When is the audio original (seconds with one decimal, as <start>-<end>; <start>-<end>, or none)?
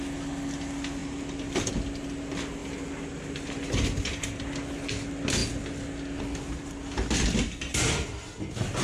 0.0-7.7; 8.2-8.8